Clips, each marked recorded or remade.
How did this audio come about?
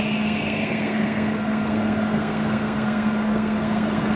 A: remade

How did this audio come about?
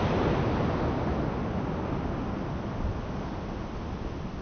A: recorded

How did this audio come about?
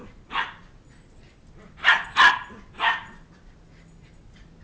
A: recorded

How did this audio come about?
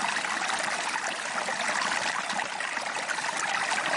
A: recorded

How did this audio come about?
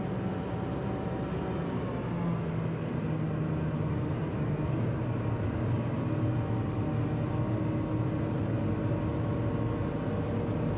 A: recorded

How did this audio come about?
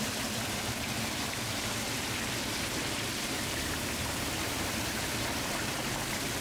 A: remade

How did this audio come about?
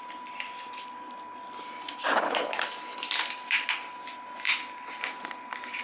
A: recorded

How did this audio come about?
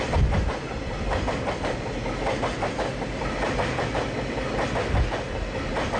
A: recorded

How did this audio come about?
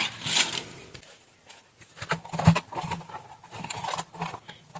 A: recorded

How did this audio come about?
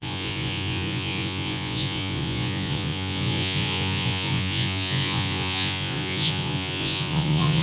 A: remade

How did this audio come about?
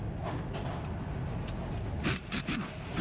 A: recorded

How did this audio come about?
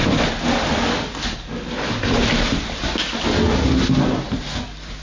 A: recorded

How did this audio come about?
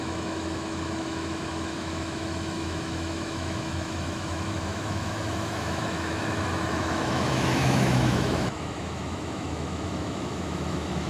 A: remade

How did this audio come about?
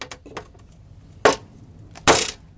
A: recorded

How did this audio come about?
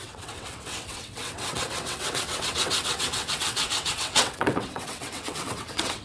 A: remade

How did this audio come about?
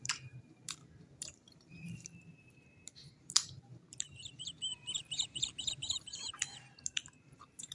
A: remade